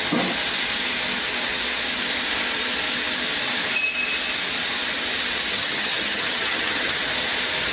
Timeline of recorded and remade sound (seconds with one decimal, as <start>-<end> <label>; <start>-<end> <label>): 0.0-5.5 recorded; 5.5-7.0 remade; 7.0-7.7 recorded